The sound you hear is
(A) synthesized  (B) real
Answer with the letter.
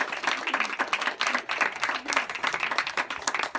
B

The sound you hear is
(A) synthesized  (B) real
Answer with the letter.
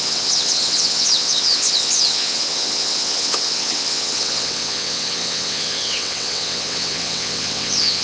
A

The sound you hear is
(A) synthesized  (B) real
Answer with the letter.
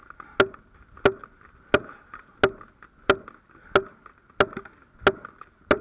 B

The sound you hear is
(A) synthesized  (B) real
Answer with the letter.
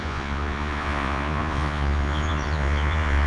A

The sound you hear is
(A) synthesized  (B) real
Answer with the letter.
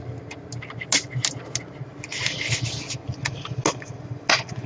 B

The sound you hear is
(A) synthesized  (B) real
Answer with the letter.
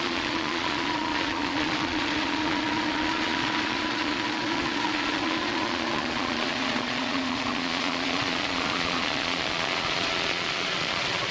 A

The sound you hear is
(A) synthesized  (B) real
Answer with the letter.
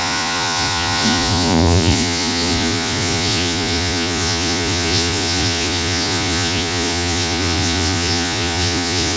A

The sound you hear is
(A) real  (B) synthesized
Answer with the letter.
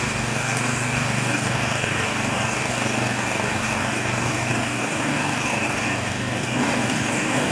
B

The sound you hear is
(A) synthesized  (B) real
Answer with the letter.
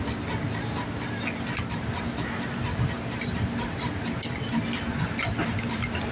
B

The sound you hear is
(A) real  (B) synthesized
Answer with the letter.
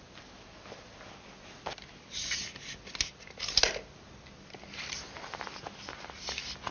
A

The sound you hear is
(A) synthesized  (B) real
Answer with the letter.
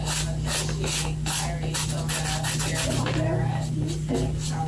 B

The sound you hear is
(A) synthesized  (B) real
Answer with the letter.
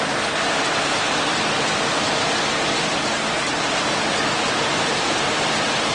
B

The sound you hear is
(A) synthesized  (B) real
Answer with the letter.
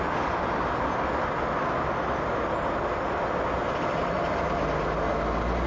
B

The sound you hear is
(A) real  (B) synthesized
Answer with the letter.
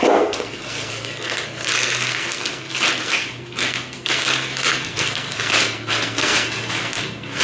B